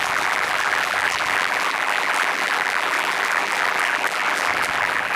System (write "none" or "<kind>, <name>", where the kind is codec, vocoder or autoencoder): vocoder, BigVGAN v2